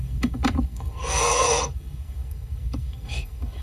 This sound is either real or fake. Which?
fake